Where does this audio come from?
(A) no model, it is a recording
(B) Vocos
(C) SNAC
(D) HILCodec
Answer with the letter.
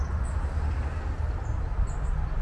A